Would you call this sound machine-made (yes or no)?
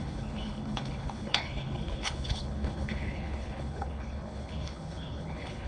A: yes